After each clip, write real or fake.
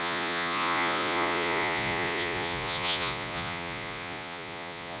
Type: fake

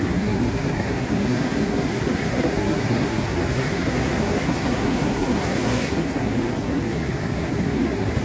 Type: fake